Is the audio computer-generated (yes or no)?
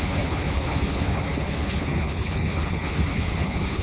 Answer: yes